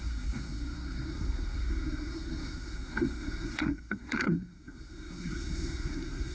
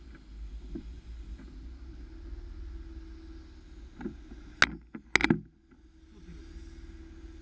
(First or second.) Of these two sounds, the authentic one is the second